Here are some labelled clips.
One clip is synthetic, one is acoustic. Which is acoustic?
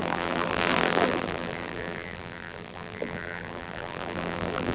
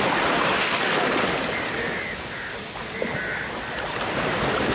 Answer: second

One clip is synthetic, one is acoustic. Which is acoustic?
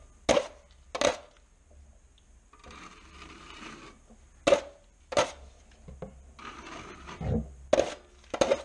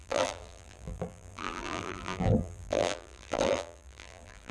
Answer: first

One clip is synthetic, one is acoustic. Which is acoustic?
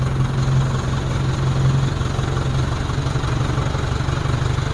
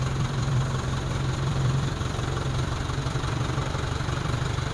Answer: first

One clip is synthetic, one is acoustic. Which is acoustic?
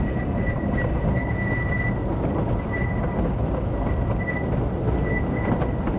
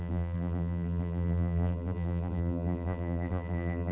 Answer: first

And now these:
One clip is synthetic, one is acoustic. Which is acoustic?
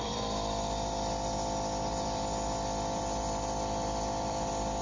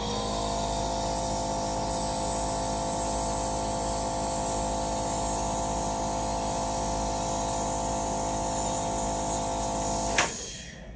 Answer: second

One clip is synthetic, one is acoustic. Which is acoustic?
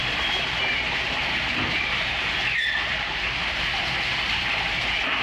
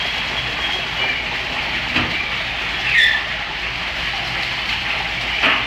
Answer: second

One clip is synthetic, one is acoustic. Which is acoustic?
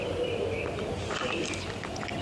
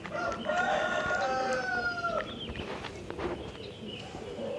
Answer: second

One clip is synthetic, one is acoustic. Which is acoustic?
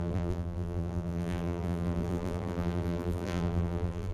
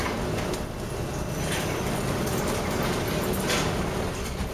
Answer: second